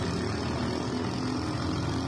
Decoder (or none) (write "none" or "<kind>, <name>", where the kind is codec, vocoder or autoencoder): none